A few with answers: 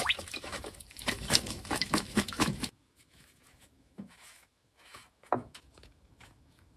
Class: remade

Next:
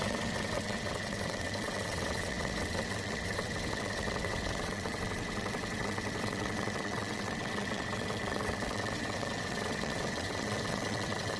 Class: remade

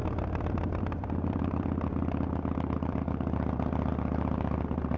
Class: recorded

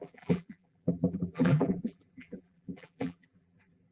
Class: remade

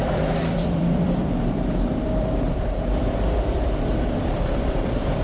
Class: remade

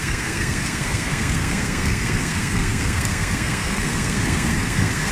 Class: remade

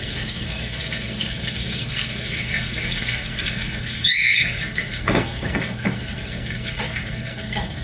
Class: remade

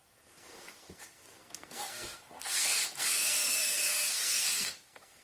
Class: remade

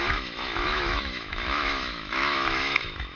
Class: remade